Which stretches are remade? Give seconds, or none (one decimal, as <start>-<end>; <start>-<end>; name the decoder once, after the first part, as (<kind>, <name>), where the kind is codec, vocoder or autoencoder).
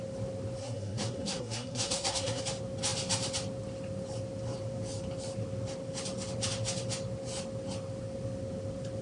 0.6-2.4 (codec, SNAC)